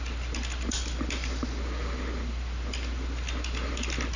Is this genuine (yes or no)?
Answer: no